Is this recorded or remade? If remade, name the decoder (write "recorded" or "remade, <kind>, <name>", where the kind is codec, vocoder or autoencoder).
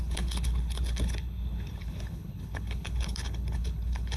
remade, codec, HILCodec